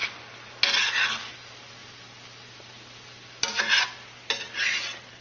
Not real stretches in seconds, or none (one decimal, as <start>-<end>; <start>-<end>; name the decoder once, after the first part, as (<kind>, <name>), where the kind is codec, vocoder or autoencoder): none